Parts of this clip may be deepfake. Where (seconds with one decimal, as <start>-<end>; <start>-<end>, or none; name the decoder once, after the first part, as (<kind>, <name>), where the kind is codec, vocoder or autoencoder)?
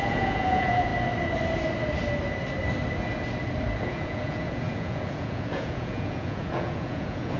0.0-0.9 (vocoder, Vocos); 3.8-7.4